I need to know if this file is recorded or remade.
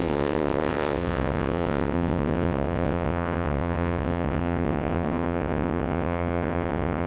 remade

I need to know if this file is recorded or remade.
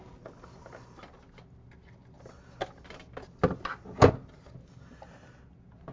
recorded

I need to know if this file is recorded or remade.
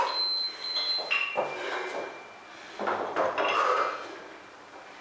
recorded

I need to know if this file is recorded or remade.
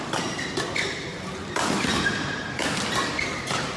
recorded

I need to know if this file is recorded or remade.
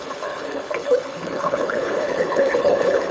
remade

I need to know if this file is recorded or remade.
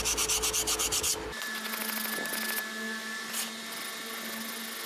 recorded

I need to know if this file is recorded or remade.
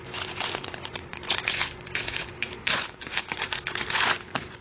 remade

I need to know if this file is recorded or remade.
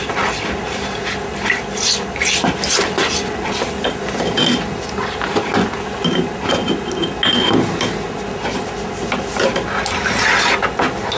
recorded